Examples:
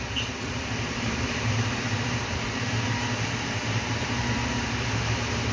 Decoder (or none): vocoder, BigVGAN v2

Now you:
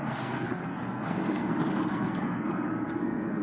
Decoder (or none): codec, SNAC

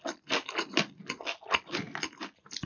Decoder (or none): none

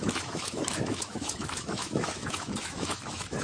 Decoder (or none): autoencoder, DAC-VAE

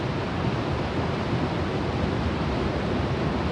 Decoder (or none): none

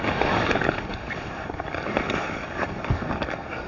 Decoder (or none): codec, DAC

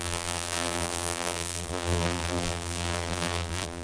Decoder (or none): vocoder, BigVGAN v2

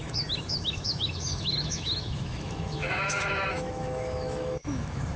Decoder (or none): autoencoder, DAC-VAE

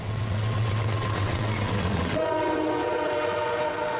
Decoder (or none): vocoder, WaveNeXt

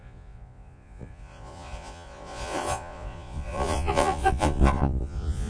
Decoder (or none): vocoder, Vocos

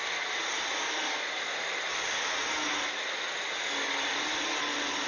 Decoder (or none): none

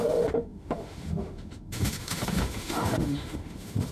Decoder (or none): autoencoder, DAC-VAE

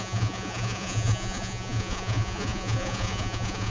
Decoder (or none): vocoder, Vocos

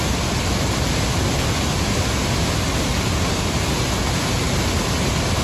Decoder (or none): none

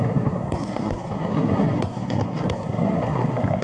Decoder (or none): codec, SNAC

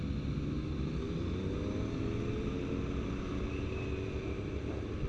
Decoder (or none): none